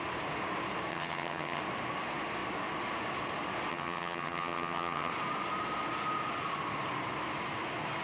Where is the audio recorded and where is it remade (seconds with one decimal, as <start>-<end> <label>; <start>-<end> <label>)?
0.0-0.9 recorded; 0.9-1.6 remade; 1.6-3.7 recorded; 3.7-5.1 remade; 5.1-8.0 recorded